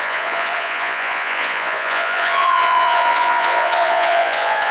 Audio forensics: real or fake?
fake